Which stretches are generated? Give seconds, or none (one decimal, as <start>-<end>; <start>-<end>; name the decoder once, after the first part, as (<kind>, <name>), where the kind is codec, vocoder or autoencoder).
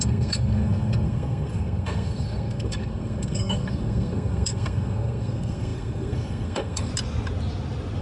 0.0-6.9 (codec, SNAC)